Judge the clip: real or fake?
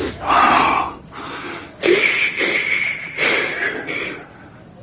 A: real